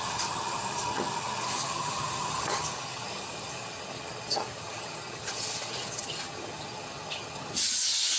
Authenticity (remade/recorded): remade